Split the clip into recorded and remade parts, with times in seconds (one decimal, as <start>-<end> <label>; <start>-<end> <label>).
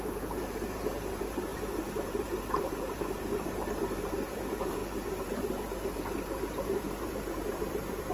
0.0-8.1 remade